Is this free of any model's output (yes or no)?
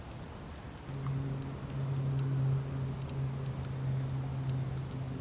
yes